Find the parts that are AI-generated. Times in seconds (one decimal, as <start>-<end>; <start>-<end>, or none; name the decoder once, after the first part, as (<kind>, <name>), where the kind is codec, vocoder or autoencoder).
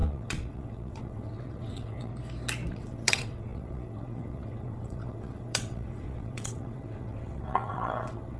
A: 0.0-2.1 (vocoder, WaveNeXt); 2.7-8.4